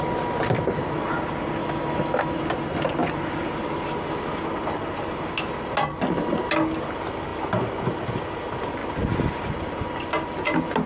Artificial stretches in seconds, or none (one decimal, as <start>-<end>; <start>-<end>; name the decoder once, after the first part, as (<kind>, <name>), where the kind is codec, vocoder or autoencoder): 1.6-2.4 (autoencoder, DAC-VAE)